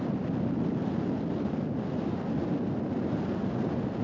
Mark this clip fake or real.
real